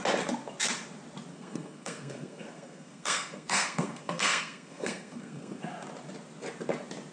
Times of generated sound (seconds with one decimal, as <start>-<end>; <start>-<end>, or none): 1.3-5.6